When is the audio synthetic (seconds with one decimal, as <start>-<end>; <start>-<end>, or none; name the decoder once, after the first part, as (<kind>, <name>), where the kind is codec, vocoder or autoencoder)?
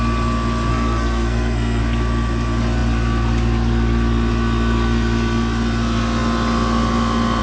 0.7-1.8 (codec, SNAC)